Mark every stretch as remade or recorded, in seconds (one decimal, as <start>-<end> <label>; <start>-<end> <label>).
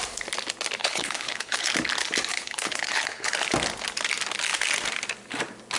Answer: 0.0-0.8 recorded; 0.8-1.7 remade; 1.7-2.3 recorded; 2.3-3.3 remade; 3.3-5.8 recorded